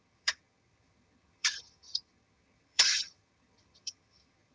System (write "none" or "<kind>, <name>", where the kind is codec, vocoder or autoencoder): vocoder, HiFi-GAN